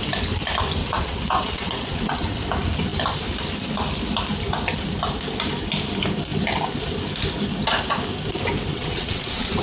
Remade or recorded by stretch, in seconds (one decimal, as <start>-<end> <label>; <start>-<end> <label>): 0.0-0.8 recorded; 0.8-2.4 remade; 2.4-8.7 recorded; 8.7-9.6 remade